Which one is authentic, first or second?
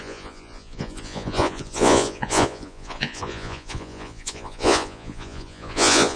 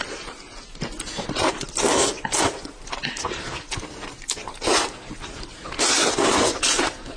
second